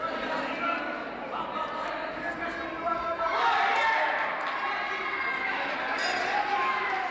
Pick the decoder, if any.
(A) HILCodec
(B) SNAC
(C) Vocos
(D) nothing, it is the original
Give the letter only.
D